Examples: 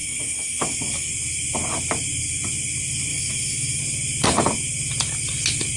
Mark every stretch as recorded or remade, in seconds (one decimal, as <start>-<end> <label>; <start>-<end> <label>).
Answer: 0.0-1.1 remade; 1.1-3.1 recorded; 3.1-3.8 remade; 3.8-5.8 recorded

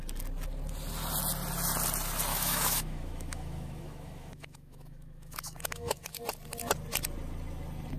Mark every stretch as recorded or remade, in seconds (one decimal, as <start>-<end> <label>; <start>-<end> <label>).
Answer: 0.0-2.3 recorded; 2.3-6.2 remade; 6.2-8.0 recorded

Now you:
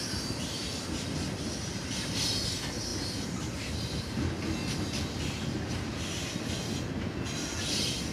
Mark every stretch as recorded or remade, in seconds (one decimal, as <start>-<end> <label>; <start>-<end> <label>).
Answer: 0.0-8.1 recorded

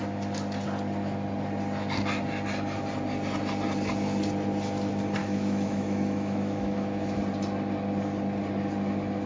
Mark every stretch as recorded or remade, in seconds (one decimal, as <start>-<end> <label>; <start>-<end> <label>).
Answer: 0.0-5.2 recorded; 5.2-7.2 remade; 7.2-9.3 recorded

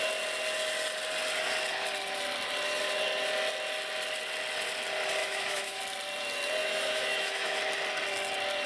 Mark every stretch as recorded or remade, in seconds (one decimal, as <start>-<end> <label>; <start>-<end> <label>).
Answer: 0.0-5.2 recorded; 5.2-5.8 remade; 5.8-6.6 recorded; 6.6-7.6 remade; 7.6-8.7 recorded

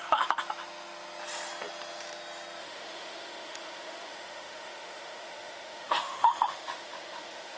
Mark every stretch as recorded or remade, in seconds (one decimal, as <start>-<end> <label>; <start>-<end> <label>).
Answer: 0.0-2.6 recorded; 2.6-7.6 remade

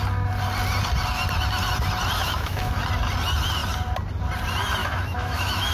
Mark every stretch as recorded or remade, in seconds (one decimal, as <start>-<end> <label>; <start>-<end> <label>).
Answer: 0.0-2.2 recorded; 2.2-2.7 remade; 2.7-4.8 recorded; 4.8-5.7 remade